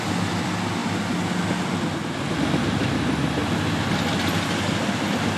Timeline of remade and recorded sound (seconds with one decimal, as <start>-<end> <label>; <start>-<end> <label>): 0.0-5.4 recorded